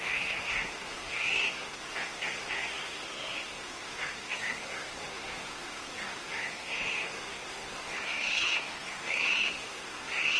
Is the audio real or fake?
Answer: fake